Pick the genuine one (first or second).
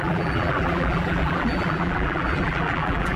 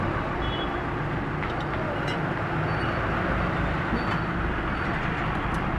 second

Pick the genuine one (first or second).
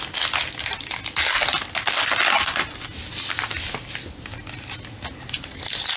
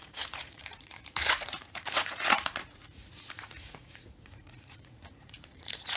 first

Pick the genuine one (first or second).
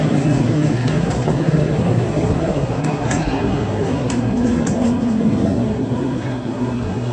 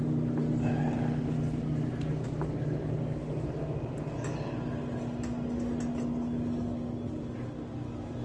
second